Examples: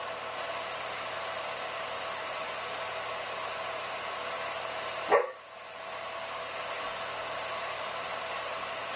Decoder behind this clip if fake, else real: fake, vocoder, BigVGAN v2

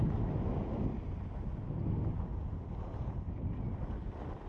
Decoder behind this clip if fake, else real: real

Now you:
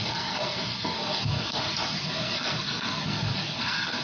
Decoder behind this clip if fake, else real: fake, codec, SNAC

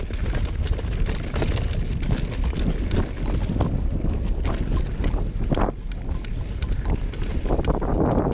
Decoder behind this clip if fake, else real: real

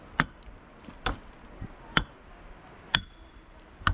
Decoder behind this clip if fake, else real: real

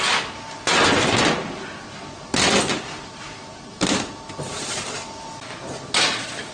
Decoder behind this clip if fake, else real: real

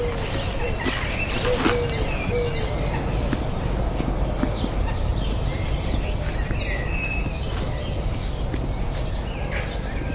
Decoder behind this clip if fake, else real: real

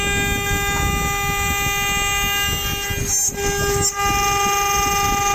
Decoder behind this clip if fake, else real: real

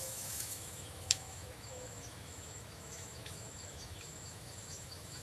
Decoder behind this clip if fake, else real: fake, autoencoder, DAC-VAE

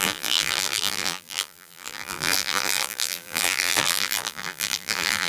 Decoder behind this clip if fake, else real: fake, vocoder, BigVGAN v2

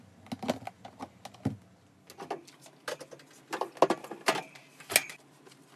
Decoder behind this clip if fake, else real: real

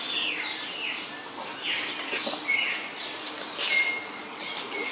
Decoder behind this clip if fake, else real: real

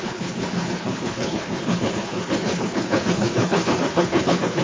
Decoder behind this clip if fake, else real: fake, codec, HILCodec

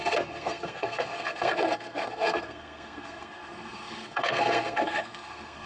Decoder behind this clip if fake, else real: fake, codec, SNAC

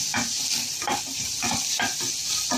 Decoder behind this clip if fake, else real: fake, vocoder, BigVGAN v2